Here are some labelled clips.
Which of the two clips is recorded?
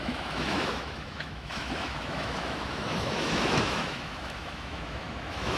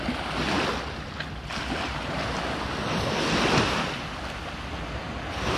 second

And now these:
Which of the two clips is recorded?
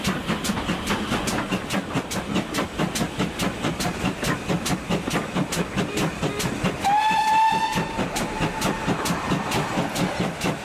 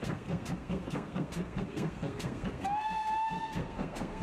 first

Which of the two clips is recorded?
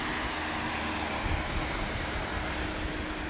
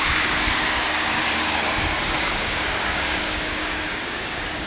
first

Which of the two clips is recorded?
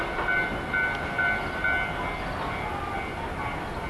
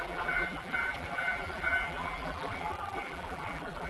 first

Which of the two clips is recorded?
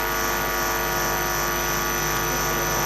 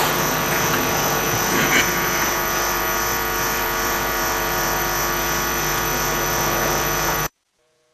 first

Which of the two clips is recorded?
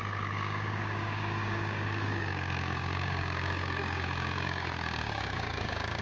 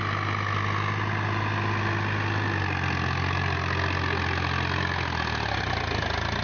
second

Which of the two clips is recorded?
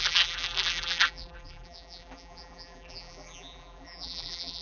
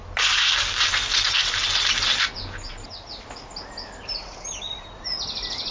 second